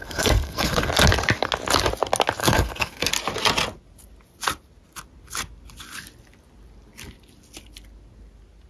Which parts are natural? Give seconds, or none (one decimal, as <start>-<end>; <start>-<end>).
0.9-2.4; 3.1-8.7